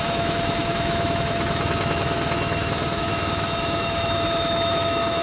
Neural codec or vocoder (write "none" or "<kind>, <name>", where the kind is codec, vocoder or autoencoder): autoencoder, DAC-VAE